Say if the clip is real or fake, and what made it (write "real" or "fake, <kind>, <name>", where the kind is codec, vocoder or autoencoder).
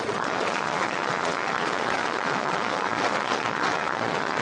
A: fake, vocoder, Vocos